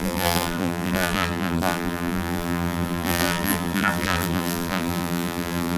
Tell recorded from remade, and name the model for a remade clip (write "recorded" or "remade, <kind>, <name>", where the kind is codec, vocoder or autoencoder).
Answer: remade, vocoder, BigVGAN v2